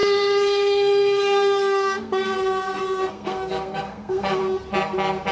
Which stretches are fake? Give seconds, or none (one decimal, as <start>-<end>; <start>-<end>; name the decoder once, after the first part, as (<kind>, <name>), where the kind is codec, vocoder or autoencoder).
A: 0.0-4.4 (codec, SNAC)